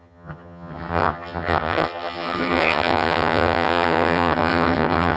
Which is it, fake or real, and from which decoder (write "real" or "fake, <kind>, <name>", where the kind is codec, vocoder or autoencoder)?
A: fake, vocoder, HiFi-GAN